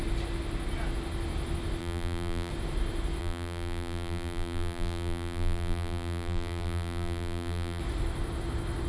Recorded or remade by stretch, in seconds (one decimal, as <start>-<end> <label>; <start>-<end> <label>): 0.0-1.8 recorded; 1.8-2.5 remade; 2.5-3.2 recorded; 3.2-7.8 remade; 7.8-8.9 recorded